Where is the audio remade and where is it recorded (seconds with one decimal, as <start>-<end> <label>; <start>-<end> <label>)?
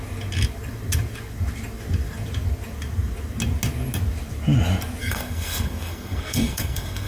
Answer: 0.0-5.0 recorded; 5.0-7.1 remade